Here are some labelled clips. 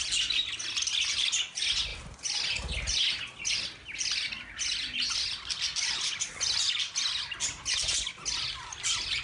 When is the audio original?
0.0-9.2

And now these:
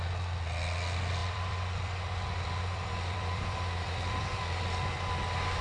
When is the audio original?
0.0-1.2; 4.6-5.6